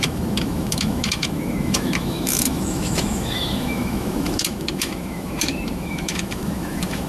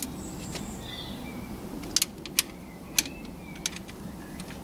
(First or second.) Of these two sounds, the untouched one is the second